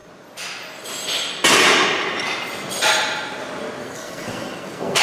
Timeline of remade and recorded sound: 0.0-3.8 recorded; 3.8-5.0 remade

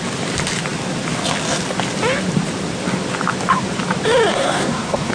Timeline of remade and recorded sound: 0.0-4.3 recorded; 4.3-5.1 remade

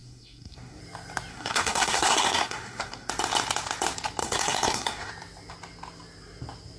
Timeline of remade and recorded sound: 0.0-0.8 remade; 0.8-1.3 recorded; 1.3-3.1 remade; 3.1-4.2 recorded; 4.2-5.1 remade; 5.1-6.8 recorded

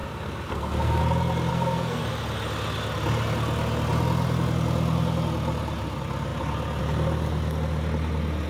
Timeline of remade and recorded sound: 0.0-1.0 remade; 1.0-1.5 recorded; 1.5-2.0 remade; 2.0-8.5 recorded

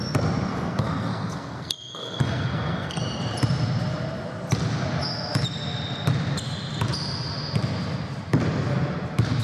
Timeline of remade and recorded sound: 0.0-0.5 recorded; 0.5-3.0 remade; 3.0-9.4 recorded

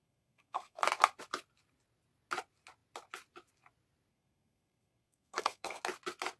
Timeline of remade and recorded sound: 0.0-0.8 remade; 0.8-4.1 recorded; 4.1-5.8 remade; 5.8-6.4 recorded

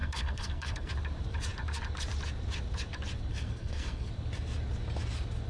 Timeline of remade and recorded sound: 0.0-0.9 remade; 0.9-3.3 recorded; 3.3-4.1 remade; 4.1-5.5 recorded

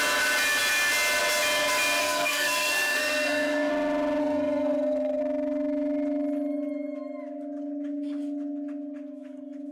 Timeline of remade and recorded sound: 0.0-2.0 recorded; 2.0-3.7 remade; 3.7-4.2 recorded; 4.2-5.2 remade; 5.2-9.7 recorded